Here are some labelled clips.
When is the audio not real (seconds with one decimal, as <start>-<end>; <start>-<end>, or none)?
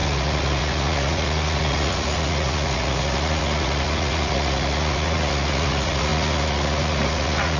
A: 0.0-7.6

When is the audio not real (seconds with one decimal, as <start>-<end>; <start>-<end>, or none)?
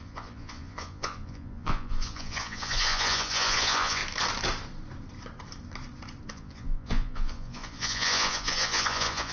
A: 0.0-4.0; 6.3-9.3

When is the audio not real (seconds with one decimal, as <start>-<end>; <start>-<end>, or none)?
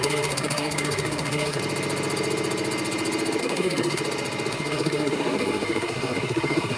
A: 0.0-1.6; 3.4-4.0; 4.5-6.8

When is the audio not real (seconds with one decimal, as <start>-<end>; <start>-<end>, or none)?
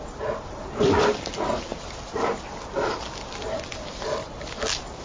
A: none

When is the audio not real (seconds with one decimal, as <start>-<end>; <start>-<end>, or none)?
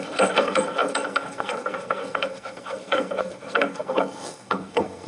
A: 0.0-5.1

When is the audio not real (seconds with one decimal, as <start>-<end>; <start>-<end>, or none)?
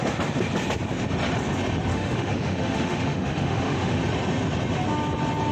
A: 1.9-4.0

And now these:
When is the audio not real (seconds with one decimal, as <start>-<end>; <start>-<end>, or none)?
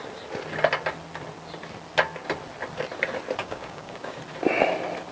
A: 3.4-4.2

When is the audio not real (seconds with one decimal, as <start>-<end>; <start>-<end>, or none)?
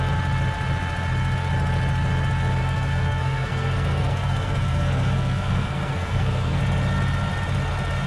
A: 2.6-6.6